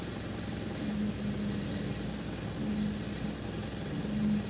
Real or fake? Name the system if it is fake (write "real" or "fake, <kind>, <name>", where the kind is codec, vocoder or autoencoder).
real